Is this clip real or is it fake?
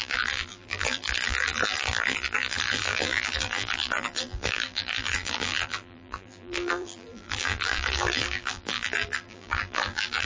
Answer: fake